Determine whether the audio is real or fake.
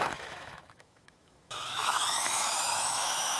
fake